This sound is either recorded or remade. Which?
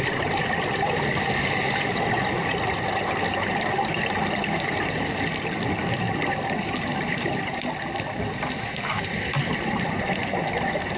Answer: recorded